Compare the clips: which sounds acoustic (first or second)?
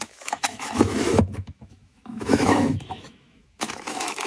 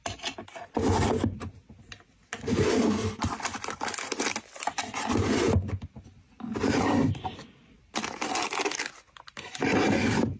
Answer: second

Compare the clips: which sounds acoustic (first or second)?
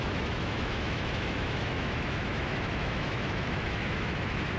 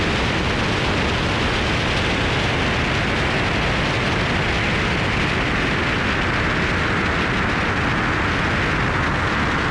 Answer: second